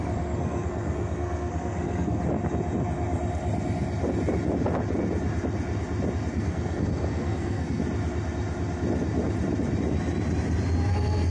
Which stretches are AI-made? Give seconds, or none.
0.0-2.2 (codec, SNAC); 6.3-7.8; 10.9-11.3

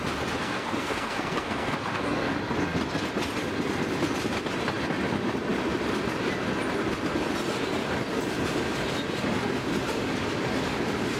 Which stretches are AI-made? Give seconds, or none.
0.4-2.4 (codec, SNAC)